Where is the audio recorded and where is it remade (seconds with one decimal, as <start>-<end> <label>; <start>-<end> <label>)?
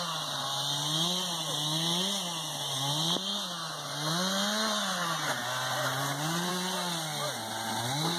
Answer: 0.0-5.3 recorded; 5.3-6.5 remade; 6.5-8.2 recorded